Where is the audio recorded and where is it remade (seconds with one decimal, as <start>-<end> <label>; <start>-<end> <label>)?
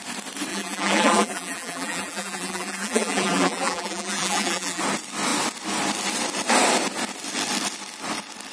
0.0-0.5 recorded; 0.5-4.8 remade; 4.8-8.5 recorded